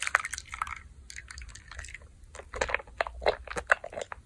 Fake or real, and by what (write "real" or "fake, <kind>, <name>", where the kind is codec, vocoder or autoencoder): real